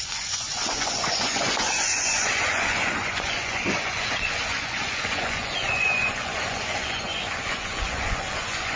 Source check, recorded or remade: remade